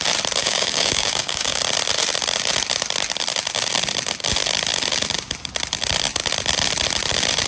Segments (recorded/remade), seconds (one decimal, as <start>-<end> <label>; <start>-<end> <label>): 0.0-0.4 recorded; 0.4-1.6 remade; 1.6-7.5 recorded